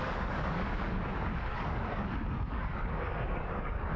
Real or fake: fake